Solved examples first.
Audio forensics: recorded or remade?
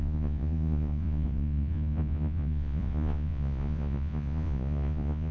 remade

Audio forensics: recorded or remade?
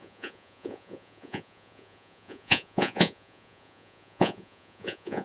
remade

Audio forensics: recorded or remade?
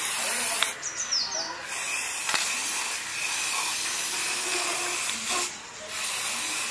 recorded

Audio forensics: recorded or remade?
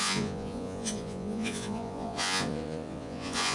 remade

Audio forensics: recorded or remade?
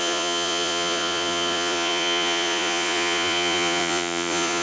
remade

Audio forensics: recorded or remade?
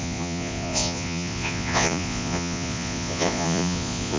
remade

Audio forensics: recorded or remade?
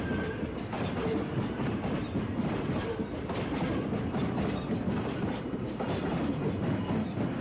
recorded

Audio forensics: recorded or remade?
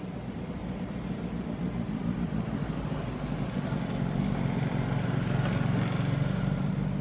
recorded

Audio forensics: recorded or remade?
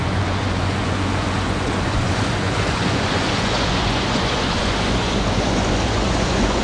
remade